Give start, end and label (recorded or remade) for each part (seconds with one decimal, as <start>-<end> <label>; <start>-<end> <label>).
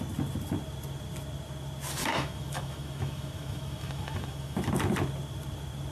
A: 0.0-2.0 recorded; 2.0-4.7 remade; 4.7-5.9 recorded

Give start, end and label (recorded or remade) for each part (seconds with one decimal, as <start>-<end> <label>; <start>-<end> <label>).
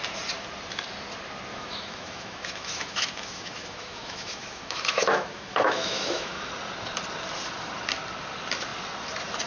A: 0.0-1.5 recorded; 1.5-6.5 remade; 6.5-9.5 recorded